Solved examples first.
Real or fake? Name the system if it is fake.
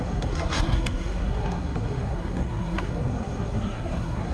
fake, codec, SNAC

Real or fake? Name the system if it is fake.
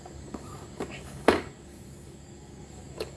fake, codec, DAC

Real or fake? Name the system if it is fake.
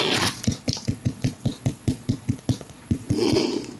fake, vocoder, Vocos